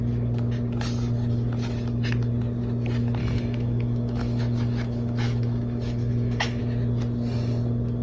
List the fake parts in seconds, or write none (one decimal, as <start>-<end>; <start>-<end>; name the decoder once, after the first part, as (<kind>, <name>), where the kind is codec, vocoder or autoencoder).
3.2-6.6 (autoencoder, DAC-VAE)